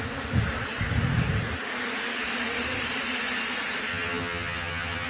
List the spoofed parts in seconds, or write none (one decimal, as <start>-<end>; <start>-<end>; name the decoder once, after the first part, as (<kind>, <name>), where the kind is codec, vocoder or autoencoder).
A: 3.9-5.1 (vocoder, HiFi-GAN)